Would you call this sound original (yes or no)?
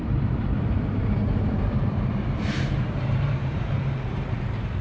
no